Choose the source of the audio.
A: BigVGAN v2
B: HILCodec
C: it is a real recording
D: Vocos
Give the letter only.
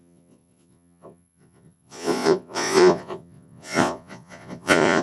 D